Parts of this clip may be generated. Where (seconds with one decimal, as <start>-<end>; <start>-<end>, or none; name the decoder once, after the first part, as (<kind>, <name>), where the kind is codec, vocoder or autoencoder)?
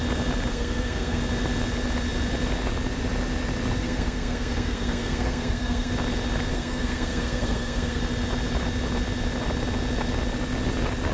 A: 0.5-1.2 (codec, SNAC); 3.8-5.9; 6.5-8.0